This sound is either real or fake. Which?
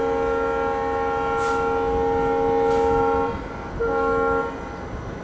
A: real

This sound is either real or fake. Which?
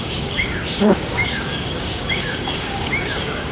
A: fake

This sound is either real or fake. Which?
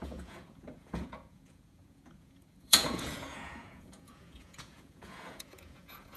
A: fake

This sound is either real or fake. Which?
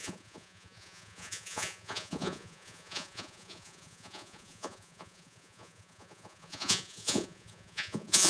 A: fake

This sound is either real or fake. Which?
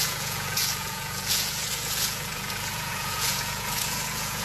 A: fake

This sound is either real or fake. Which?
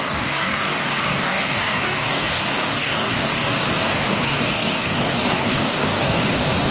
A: fake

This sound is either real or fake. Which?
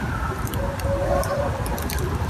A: real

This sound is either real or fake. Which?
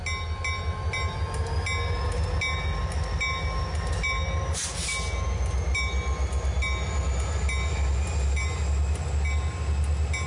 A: real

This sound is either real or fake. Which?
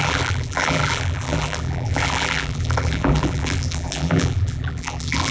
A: fake